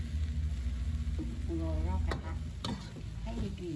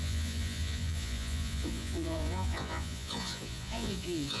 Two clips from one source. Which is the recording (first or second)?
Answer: first